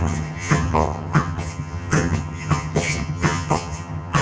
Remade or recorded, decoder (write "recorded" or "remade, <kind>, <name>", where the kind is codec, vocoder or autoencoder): remade, vocoder, HiFi-GAN